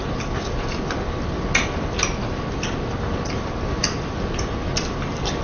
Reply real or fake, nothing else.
real